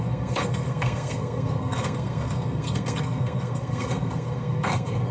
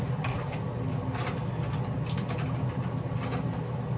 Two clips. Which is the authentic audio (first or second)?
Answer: second